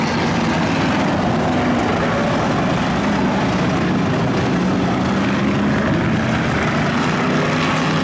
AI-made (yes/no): no